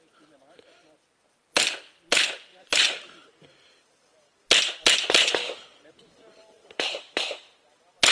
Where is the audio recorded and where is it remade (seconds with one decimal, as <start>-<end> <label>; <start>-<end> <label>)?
0.0-2.5 recorded; 2.5-3.3 remade; 3.3-6.4 recorded; 6.4-7.3 remade; 7.3-8.1 recorded